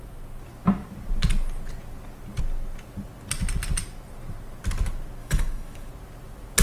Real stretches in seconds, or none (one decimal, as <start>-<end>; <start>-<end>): 0.0-5.2; 5.9-6.6